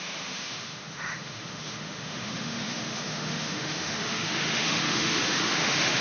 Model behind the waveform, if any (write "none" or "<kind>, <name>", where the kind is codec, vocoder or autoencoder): autoencoder, DAC-VAE